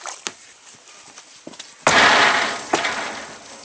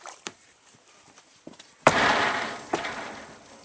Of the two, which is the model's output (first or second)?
second